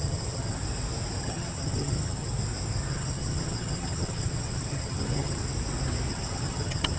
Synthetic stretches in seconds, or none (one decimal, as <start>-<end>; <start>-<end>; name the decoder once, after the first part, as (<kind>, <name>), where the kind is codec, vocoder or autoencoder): 0.0-0.6 (vocoder, HiFi-GAN); 1.2-2.3; 2.9-5.4; 6.1-7.0